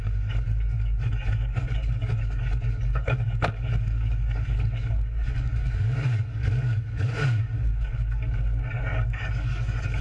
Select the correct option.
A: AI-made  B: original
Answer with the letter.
A